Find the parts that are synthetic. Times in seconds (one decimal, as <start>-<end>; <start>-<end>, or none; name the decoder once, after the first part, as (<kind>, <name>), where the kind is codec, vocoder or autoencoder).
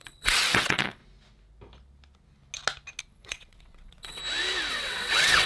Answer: 0.0-1.0 (vocoder, WaveNeXt); 3.0-4.2; 4.7-5.5